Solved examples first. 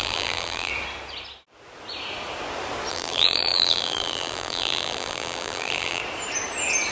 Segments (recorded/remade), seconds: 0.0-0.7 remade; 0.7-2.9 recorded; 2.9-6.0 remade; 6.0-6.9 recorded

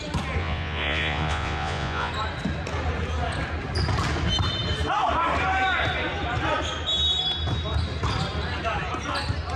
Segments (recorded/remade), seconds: 0.0-0.4 recorded; 0.4-2.1 remade; 2.1-9.6 recorded